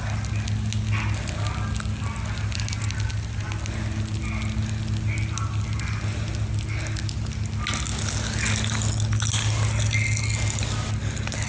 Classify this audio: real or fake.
real